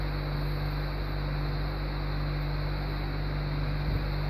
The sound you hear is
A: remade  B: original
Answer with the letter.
B